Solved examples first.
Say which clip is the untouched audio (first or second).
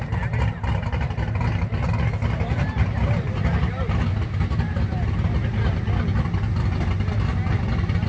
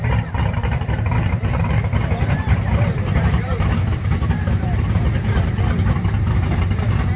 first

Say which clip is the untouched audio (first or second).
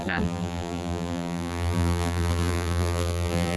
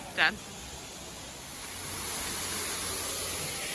second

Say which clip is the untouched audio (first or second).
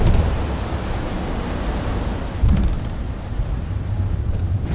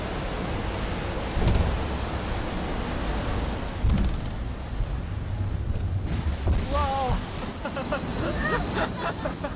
second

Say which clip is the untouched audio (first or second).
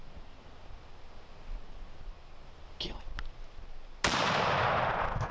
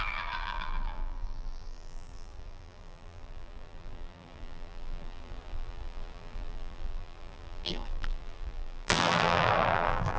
first